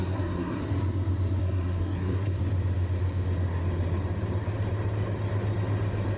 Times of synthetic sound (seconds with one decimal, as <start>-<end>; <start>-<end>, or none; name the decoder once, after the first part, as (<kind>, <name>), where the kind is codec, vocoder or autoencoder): 0.0-0.6 (codec, SNAC); 1.4-2.4

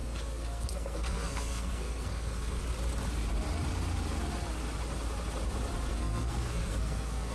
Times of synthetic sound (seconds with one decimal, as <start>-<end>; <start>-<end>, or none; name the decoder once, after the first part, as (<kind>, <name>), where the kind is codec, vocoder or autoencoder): 0.0-2.6 (codec, SNAC); 5.9-7.3

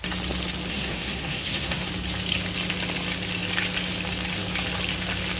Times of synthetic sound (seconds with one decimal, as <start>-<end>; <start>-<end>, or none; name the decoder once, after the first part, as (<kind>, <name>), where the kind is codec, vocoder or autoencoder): 0.7-1.9 (codec, SNAC)

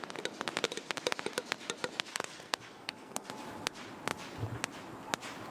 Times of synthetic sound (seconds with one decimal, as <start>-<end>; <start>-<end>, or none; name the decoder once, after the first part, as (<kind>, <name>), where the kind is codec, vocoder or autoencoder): 2.1-3.3 (codec, SNAC)

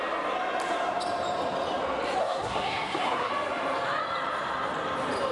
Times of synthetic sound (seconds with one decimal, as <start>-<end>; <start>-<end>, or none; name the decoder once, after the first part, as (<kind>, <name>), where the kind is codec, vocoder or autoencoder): 2.2-3.3 (codec, SNAC)